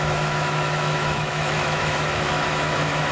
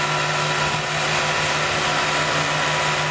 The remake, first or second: first